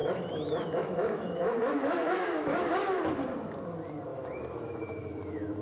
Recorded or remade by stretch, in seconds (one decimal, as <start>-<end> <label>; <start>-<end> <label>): 0.0-3.0 remade; 3.0-4.1 recorded; 4.1-5.6 remade